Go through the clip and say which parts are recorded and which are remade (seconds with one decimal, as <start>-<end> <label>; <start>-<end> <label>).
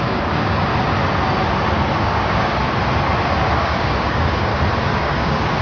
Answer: 0.0-0.7 remade; 0.7-2.0 recorded; 2.0-2.6 remade; 2.6-3.6 recorded; 3.6-4.5 remade; 4.5-5.0 recorded; 5.0-5.6 remade